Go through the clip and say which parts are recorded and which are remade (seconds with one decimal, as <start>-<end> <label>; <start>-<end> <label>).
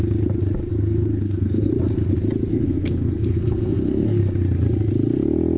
0.0-0.7 recorded; 0.7-1.7 remade; 1.7-2.5 recorded; 2.5-4.2 remade; 4.2-5.6 recorded